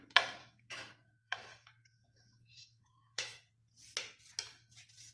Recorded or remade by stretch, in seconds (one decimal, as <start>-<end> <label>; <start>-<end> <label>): 0.0-0.4 recorded; 0.4-3.5 remade; 3.5-5.1 recorded